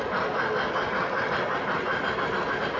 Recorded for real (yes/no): yes